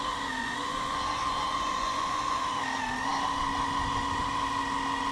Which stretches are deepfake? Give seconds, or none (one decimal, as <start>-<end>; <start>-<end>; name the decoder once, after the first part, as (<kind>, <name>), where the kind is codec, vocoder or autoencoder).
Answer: 0.4-2.4 (vocoder, Vocos)